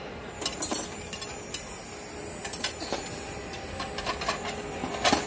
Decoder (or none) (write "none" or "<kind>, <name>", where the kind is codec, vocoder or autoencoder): none